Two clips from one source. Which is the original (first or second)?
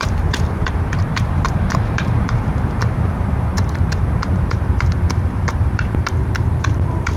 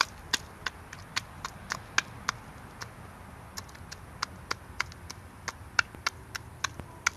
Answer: second